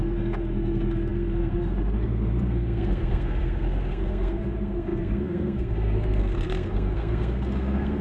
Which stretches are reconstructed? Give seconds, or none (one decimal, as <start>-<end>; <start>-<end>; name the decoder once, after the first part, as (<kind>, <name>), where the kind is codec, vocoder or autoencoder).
0.0-8.0 (codec, SNAC)